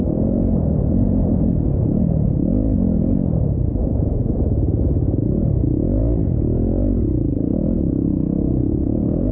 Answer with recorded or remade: remade